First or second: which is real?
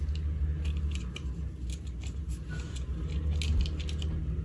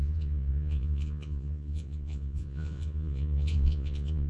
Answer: first